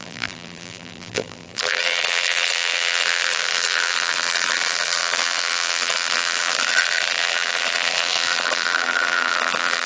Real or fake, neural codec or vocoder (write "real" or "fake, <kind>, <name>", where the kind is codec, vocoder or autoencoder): fake, vocoder, BigVGAN v2